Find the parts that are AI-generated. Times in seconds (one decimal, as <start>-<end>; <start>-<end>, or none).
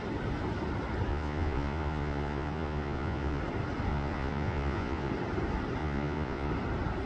1.1-3.4; 3.9-5.1; 5.8-6.5